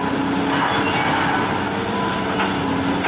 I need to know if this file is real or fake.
real